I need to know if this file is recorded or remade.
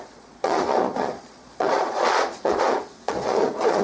remade